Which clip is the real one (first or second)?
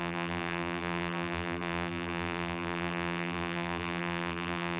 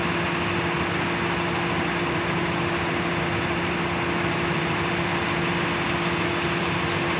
second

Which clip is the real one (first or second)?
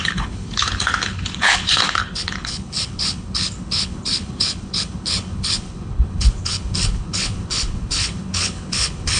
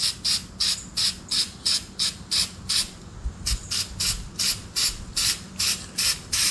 second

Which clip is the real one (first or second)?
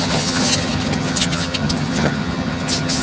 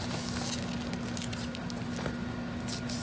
second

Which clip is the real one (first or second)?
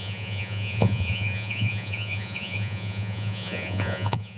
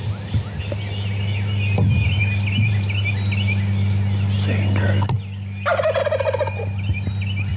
second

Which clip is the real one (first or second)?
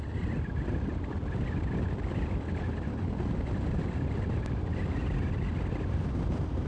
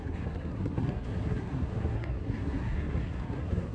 first